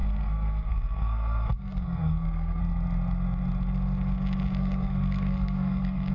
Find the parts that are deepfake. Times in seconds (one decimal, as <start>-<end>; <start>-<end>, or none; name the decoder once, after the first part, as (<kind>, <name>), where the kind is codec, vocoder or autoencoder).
0.0-2.6 (codec, SNAC); 4.6-6.1